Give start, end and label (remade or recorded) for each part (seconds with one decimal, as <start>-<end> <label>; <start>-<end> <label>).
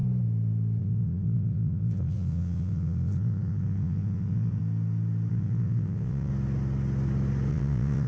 0.0-0.8 recorded; 0.8-4.6 remade; 4.6-5.3 recorded; 5.3-6.3 remade; 6.3-7.5 recorded; 7.5-8.1 remade